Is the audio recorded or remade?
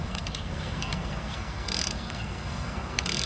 remade